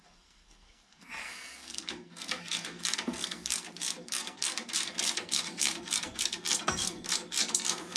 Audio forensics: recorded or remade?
remade